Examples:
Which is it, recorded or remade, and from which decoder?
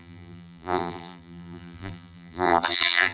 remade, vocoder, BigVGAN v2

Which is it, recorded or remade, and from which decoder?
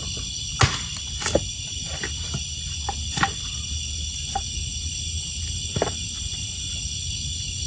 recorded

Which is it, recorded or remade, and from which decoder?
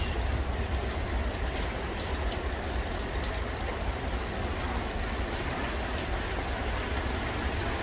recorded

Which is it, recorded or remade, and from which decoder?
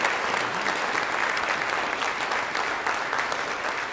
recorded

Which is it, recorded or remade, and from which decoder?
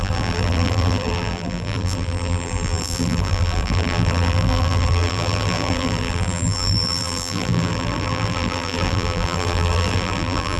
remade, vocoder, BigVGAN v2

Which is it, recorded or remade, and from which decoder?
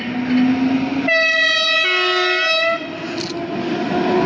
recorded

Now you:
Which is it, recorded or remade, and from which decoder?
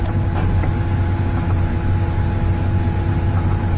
recorded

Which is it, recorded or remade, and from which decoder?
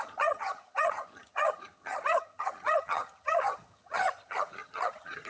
remade, vocoder, HiFi-GAN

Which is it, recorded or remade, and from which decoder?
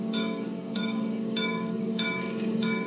remade, codec, DAC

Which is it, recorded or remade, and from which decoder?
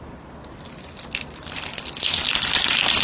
recorded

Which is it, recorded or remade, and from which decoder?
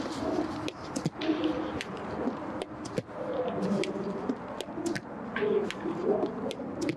recorded